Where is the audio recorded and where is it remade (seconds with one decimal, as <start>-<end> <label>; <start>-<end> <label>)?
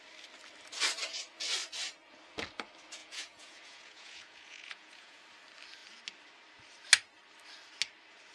0.0-3.0 recorded; 3.0-5.2 remade; 5.2-8.3 recorded